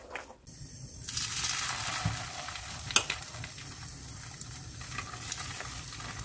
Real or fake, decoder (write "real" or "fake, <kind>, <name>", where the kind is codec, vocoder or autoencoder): real